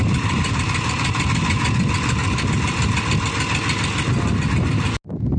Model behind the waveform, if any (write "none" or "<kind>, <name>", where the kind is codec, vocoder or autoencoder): none